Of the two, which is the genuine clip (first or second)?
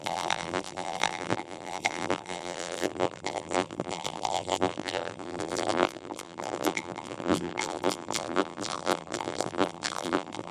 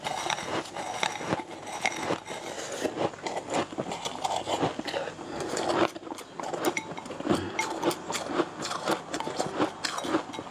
second